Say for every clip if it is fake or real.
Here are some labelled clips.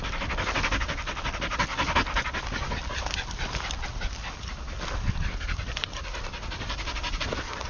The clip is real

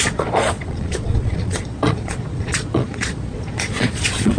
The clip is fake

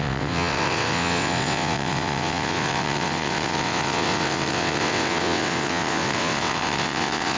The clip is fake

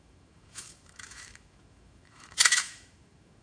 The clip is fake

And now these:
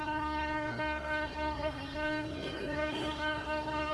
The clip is fake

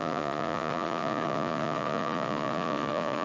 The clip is fake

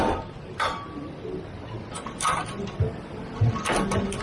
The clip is real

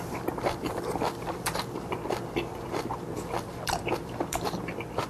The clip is fake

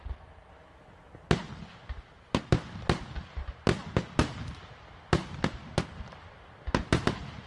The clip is real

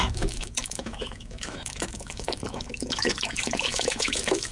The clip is fake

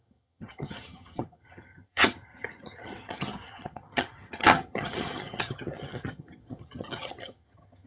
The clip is fake